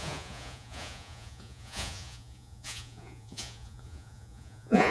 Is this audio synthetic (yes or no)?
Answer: yes